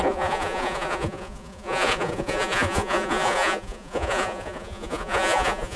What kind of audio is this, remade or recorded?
remade